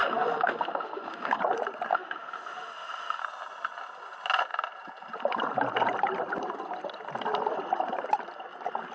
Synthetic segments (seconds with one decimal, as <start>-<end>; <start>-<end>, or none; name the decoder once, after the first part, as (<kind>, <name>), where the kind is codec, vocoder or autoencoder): 0.0-1.4 (autoencoder, DAC-VAE); 1.9-3.2